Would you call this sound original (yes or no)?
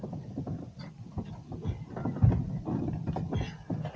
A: yes